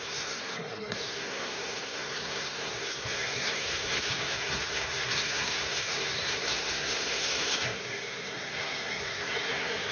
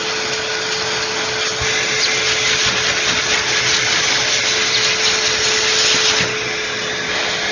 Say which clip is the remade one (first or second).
first